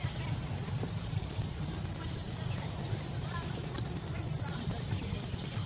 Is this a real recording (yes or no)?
yes